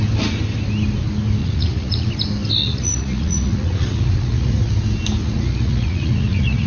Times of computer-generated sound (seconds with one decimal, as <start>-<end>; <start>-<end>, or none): 1.4-2.1; 2.6-4.7; 5.2-6.7